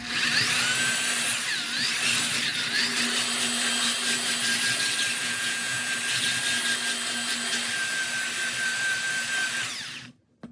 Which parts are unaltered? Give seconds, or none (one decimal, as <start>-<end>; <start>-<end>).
0.0-5.2; 5.9-10.5